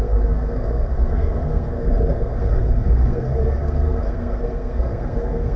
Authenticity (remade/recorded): remade